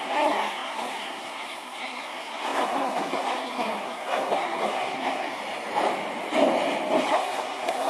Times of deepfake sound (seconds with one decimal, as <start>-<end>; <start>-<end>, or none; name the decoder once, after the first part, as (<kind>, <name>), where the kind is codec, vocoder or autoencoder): 0.0-5.4 (codec, SNAC); 7.1-7.9